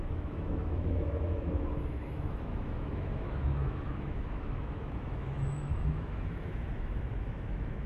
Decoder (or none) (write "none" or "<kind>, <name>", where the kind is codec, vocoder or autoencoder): autoencoder, DAC-VAE